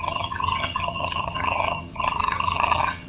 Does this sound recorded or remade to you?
remade